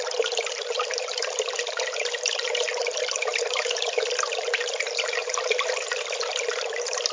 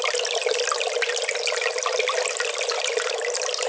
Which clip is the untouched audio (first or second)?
second